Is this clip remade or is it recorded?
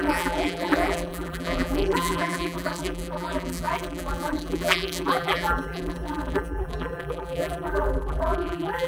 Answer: remade